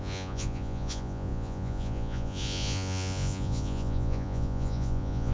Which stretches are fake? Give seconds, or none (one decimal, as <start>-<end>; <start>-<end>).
0.0-5.3